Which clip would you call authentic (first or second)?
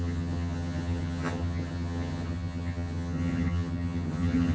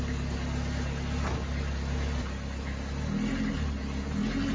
second